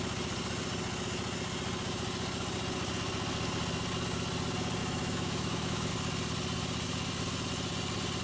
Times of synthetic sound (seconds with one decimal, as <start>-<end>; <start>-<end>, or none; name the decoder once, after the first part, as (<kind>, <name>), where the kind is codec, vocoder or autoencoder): 4.8-5.9 (autoencoder, DAC-VAE)